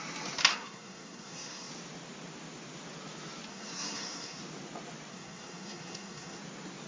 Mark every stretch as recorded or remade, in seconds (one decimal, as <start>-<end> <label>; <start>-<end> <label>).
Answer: 0.0-0.5 recorded; 0.5-1.7 remade; 1.7-3.5 recorded; 3.5-4.4 remade; 4.4-5.1 recorded; 5.1-6.4 remade; 6.4-6.9 recorded